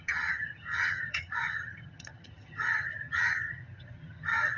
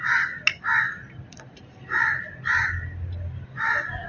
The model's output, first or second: first